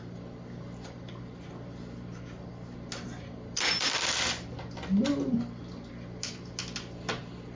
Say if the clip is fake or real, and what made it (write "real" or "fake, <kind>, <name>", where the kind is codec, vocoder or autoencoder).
real